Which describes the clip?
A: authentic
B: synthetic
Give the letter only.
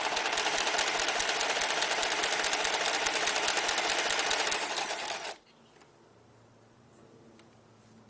A